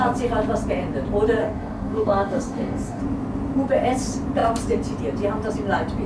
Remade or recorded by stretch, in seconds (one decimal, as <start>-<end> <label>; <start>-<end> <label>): 0.0-1.4 recorded; 1.4-3.0 remade; 3.0-6.1 recorded